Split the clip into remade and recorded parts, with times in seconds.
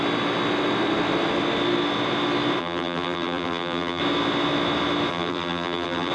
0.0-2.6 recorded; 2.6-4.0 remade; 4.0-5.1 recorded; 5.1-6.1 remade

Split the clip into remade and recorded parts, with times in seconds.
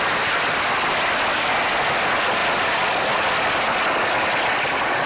0.0-5.1 recorded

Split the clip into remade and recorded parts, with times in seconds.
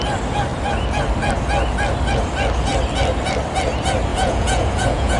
0.0-4.1 recorded; 4.1-5.2 remade